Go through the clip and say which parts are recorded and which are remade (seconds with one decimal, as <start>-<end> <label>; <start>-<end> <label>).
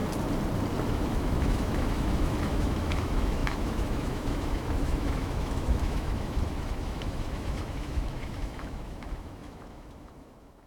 0.0-0.9 recorded; 0.9-10.7 remade